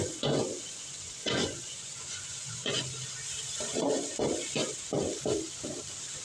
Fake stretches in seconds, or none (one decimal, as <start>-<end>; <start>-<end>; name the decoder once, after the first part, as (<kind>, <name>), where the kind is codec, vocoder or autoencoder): 0.0-2.8 (vocoder, Vocos)